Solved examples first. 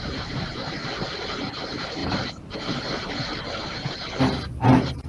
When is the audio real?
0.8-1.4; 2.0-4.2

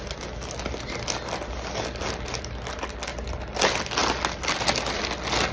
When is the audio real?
0.0-5.5

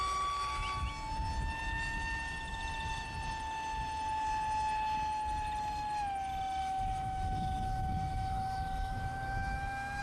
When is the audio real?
0.0-6.6

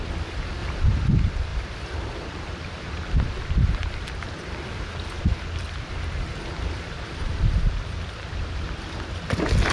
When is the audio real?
0.0-9.7

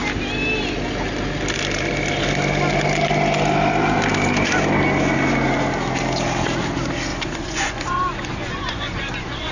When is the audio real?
0.0-7.1

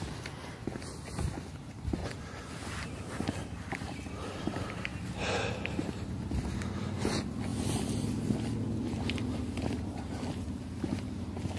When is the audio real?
0.0-2.0; 2.5-11.6

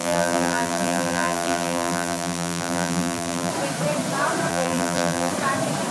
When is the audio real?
3.5-4.5; 5.3-5.9